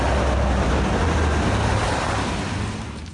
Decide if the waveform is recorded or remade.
recorded